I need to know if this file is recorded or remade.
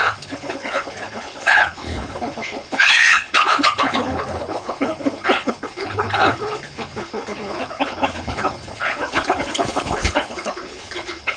remade